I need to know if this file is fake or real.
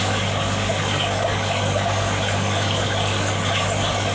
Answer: fake